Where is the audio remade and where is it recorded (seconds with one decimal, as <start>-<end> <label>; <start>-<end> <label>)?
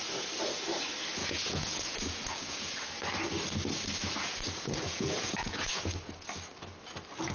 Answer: 0.0-1.2 recorded; 1.2-2.7 remade; 2.7-4.2 recorded; 4.2-5.9 remade; 5.9-7.3 recorded